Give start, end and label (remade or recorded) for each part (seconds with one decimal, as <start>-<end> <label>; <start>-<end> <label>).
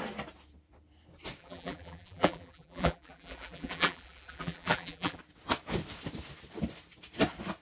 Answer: 0.0-1.4 recorded; 1.4-5.2 remade; 5.2-7.6 recorded